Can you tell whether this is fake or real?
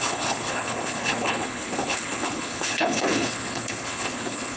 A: fake